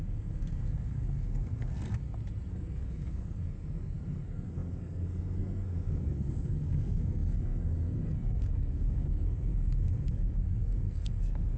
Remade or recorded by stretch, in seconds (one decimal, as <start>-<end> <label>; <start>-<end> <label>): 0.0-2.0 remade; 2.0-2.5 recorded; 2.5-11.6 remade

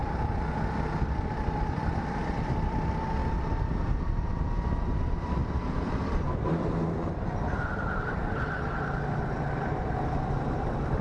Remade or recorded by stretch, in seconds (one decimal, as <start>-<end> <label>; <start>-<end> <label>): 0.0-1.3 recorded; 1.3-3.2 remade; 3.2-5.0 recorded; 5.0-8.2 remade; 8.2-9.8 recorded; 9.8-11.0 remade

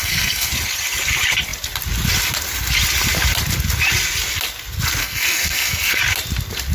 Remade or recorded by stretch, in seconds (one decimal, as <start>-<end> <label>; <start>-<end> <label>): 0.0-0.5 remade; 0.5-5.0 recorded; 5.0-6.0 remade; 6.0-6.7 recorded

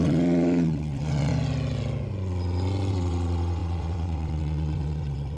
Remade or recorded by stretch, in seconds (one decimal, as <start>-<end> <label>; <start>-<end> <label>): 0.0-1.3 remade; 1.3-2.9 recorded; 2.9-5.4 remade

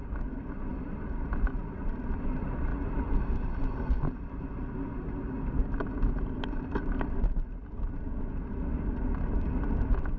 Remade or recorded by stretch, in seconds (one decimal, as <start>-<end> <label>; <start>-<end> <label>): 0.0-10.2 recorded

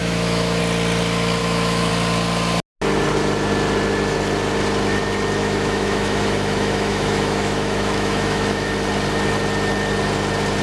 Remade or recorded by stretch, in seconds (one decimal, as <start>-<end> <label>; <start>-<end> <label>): 0.0-0.6 remade; 0.6-1.4 recorded; 1.4-1.9 remade; 1.9-5.4 recorded; 5.4-8.7 remade; 8.7-10.6 recorded